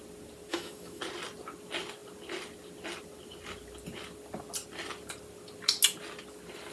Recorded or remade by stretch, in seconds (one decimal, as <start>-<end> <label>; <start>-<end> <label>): 0.0-0.5 recorded; 0.5-1.0 remade; 1.0-6.7 recorded